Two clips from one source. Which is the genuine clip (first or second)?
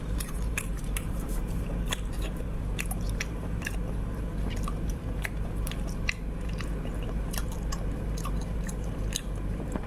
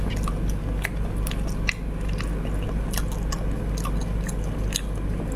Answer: second